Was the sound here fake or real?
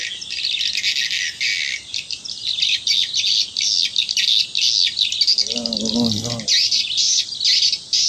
real